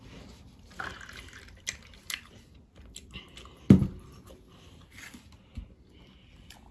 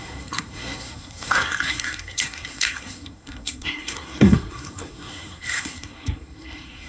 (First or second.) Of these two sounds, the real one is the first